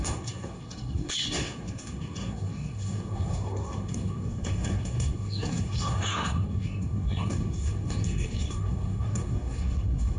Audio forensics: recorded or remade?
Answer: remade